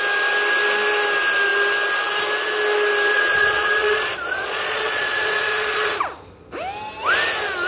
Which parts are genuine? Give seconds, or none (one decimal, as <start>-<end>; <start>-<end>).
0.0-3.1; 5.9-7.7